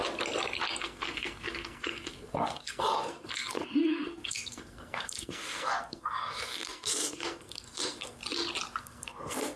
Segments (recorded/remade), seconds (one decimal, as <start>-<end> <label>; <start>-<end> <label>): 0.0-0.8 recorded; 0.8-8.2 remade; 8.2-8.8 recorded; 8.8-9.6 remade